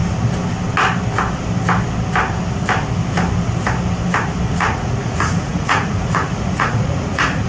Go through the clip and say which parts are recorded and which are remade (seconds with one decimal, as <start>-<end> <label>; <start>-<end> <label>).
0.0-4.5 recorded; 4.5-7.5 remade